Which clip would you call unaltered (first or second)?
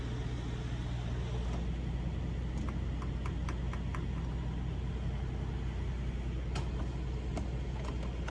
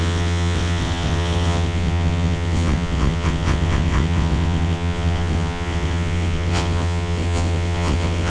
first